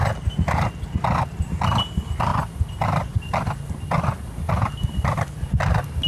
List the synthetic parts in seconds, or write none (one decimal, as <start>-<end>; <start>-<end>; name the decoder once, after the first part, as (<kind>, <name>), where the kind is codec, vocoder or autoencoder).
2.3-3.2 (vocoder, BigVGAN v2); 4.6-5.6